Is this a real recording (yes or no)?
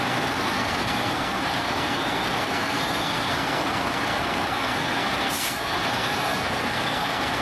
no